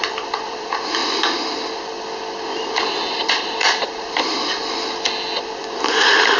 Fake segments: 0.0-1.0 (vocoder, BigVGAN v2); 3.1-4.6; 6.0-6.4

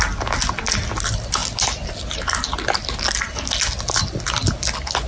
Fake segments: none

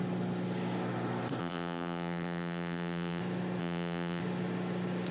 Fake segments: 1.4-3.2 (vocoder, BigVGAN v2); 3.6-4.2